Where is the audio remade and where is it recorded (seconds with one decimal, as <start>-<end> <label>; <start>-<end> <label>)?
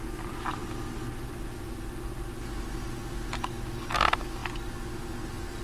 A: 0.0-5.6 recorded